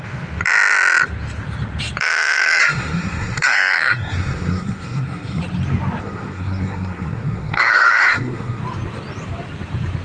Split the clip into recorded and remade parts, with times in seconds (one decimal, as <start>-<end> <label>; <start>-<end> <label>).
0.0-2.6 recorded; 2.6-5.4 remade; 5.4-6.0 recorded; 6.0-8.6 remade; 8.6-10.0 recorded